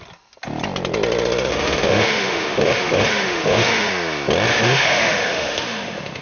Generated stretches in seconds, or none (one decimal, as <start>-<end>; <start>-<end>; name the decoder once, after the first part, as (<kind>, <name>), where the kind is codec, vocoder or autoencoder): 1.5-3.9 (autoencoder, DAC-VAE); 4.5-6.2